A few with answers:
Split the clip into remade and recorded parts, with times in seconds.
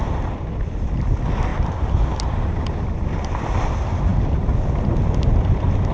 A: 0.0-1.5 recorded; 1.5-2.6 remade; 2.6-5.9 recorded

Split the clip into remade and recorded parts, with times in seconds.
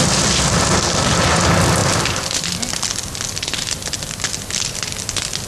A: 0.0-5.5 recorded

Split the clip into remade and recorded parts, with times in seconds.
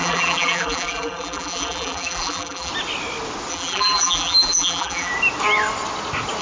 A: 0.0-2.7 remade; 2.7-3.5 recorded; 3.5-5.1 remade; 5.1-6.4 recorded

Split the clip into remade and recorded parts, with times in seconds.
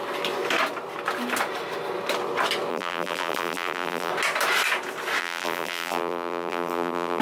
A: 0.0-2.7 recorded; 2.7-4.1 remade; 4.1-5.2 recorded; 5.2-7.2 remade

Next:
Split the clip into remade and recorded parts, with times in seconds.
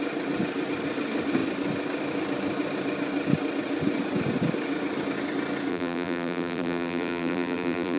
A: 0.0-5.7 recorded; 5.7-8.0 remade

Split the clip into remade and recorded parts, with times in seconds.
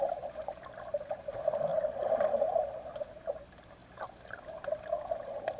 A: 0.0-1.7 recorded; 1.7-2.8 remade; 2.8-5.6 recorded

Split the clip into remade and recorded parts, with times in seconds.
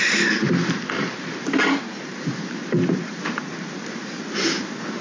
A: 0.0-1.1 recorded; 1.1-4.1 remade; 4.1-5.0 recorded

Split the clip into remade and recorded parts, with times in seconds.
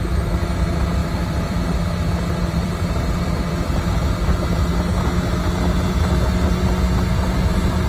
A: 0.0-1.0 recorded; 1.0-1.6 remade; 1.6-2.4 recorded; 2.4-4.7 remade; 4.7-7.9 recorded